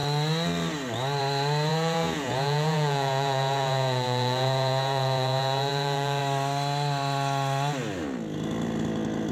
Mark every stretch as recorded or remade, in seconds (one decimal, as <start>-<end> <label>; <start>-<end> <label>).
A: 0.0-1.7 recorded; 1.7-6.2 remade; 6.2-9.3 recorded